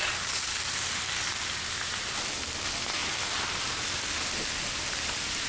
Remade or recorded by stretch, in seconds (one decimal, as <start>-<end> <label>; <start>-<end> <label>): 0.0-5.5 recorded